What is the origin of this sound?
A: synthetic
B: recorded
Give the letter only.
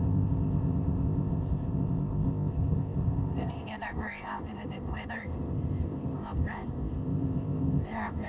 A